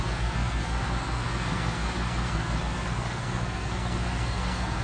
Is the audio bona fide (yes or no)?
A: no